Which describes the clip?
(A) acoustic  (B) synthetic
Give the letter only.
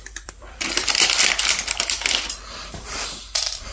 B